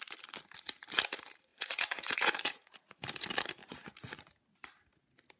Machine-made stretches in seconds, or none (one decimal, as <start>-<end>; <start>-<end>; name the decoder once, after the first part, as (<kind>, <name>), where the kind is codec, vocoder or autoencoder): 1.5-3.0 (vocoder, Vocos); 3.6-4.3